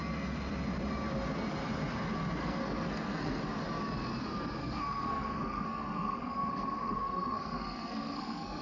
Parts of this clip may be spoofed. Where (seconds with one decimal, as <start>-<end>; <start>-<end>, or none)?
2.4-3.4; 4.6-8.6